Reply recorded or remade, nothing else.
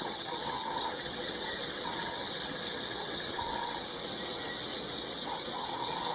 remade